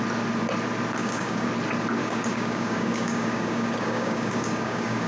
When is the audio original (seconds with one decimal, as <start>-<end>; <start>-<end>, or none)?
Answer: 0.0-1.0; 1.5-2.0